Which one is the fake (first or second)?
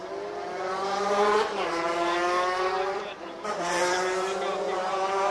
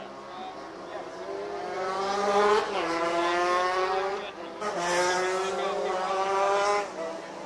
first